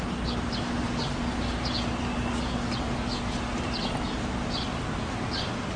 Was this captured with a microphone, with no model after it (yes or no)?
yes